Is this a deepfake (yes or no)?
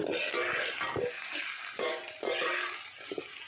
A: no